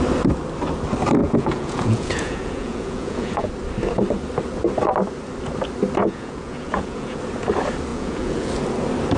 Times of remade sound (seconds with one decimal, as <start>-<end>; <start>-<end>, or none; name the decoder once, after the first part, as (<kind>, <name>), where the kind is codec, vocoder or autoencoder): 1.2-3.5 (vocoder, Vocos); 6.0-7.2; 7.9-8.5